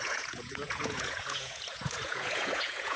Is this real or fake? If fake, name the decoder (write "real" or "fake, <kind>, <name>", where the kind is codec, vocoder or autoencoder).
fake, vocoder, Vocos